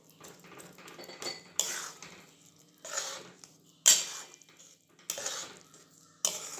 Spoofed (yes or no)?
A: no